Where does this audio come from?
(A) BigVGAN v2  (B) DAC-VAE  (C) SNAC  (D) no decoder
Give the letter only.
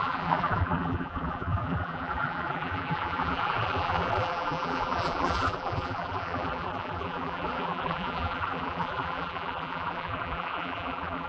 A